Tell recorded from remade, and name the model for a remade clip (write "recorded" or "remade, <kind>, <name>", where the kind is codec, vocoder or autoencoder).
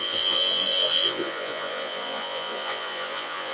remade, vocoder, Vocos